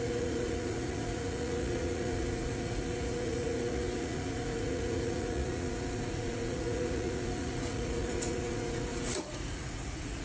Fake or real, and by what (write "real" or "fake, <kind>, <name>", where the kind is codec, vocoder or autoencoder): fake, vocoder, Vocos